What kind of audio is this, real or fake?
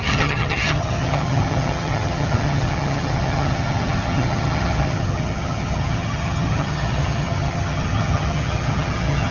fake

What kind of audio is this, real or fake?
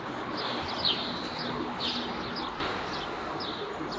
real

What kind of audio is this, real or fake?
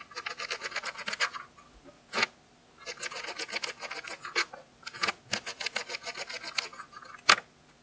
real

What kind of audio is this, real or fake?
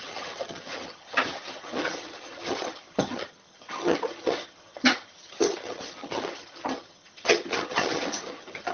fake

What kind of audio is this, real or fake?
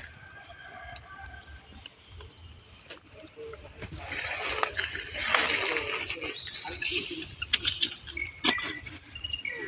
real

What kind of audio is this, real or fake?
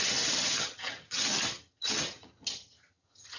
fake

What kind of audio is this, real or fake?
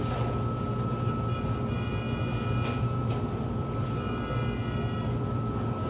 real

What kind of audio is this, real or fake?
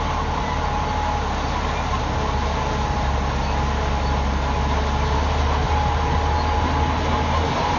real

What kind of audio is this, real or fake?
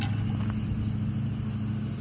real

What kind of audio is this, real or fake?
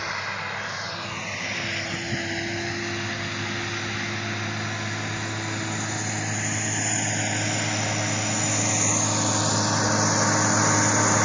real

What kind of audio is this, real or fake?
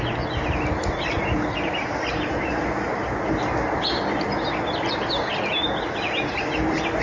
real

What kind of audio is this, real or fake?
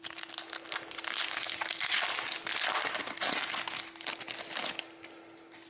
real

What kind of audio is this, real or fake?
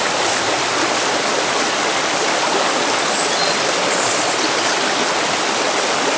real